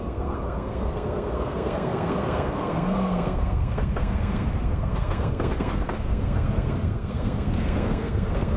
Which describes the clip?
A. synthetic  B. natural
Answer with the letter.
A